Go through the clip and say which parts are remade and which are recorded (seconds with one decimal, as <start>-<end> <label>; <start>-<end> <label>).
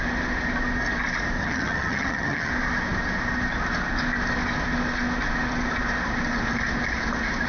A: 0.0-1.4 recorded; 1.4-2.5 remade; 2.5-7.5 recorded